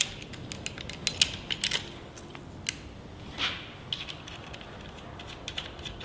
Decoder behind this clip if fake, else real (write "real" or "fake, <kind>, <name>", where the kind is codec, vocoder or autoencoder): real